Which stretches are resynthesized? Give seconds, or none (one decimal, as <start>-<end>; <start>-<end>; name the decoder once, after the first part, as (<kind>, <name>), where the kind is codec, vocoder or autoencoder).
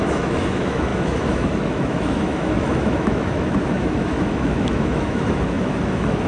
0.0-6.3 (autoencoder, DAC-VAE)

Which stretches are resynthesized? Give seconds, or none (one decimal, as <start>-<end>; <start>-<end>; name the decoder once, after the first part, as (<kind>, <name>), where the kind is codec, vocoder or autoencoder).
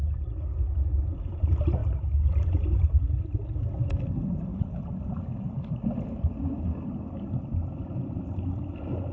none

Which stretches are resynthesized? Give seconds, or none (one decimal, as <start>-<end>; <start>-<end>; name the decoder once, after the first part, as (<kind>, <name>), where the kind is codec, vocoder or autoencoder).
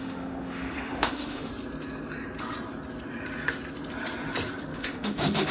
0.0-1.5 (autoencoder, DAC-VAE); 4.6-5.5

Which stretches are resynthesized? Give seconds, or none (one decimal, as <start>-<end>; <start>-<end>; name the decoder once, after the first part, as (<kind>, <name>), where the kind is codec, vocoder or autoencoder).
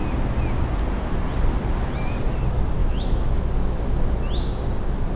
2.8-3.5 (autoencoder, DAC-VAE)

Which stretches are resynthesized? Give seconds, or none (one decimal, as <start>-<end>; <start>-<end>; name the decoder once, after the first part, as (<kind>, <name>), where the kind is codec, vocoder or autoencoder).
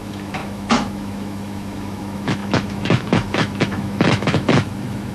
0.0-5.1 (autoencoder, DAC-VAE)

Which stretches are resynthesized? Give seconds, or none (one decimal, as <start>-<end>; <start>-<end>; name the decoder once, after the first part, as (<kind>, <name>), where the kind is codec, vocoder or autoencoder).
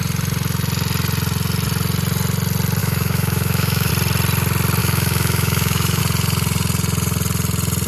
2.8-3.9 (autoencoder, DAC-VAE); 4.8-6.0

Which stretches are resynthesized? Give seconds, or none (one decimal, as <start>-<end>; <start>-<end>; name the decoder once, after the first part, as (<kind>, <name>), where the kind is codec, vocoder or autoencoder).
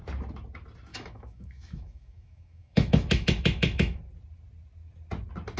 0.9-4.0 (autoencoder, DAC-VAE)